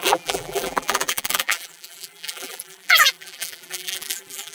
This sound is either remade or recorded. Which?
remade